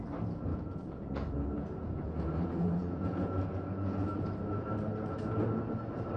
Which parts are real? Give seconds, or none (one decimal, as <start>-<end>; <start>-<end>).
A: 0.0-0.5; 4.2-6.2